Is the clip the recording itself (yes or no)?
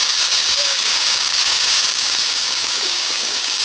no